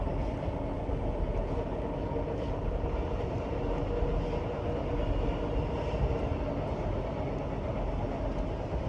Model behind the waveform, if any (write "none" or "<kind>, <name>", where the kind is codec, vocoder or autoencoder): none